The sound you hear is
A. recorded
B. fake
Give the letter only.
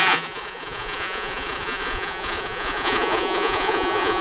B